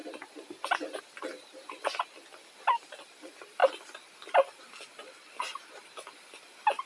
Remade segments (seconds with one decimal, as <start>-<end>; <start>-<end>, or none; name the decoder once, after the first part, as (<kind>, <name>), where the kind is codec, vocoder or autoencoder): 1.0-6.9 (vocoder, BigVGAN v2)